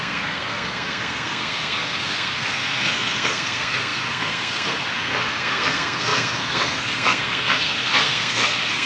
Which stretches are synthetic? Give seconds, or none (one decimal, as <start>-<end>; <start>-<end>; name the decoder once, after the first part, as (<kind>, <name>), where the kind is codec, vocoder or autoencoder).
0.0-8.9 (codec, SNAC)